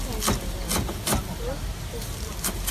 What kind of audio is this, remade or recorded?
recorded